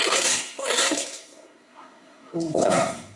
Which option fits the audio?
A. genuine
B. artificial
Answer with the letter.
B